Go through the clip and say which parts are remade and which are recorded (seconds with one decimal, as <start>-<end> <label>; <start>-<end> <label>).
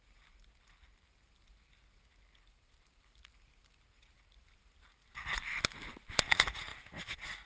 0.0-6.7 recorded; 6.7-7.5 remade